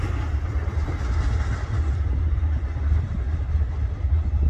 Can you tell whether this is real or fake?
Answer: real